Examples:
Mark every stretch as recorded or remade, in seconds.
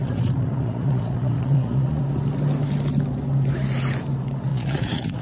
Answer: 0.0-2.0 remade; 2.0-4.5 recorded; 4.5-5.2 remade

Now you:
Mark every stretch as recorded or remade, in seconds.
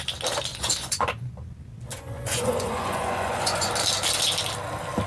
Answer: 0.0-0.5 recorded; 0.5-1.1 remade; 1.1-1.9 recorded; 1.9-3.7 remade; 3.7-5.1 recorded